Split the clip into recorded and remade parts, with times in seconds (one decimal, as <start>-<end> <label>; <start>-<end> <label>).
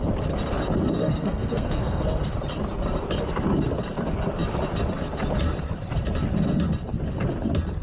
0.0-1.0 recorded; 1.0-2.3 remade; 2.3-7.8 recorded